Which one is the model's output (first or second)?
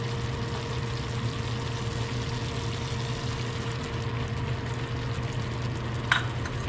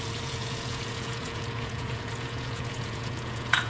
second